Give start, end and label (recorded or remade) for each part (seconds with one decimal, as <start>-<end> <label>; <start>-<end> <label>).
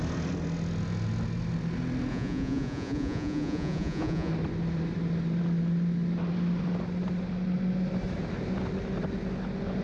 0.0-2.1 recorded; 2.1-4.3 remade; 4.3-9.8 recorded